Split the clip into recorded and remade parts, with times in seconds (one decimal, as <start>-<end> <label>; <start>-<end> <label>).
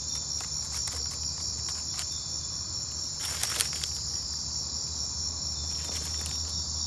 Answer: 0.0-6.9 recorded